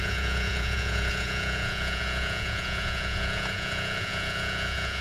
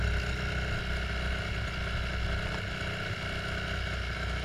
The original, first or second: second